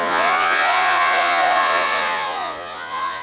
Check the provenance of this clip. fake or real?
fake